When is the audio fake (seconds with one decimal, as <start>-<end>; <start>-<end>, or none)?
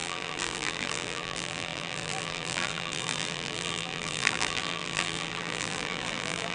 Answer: 0.0-6.5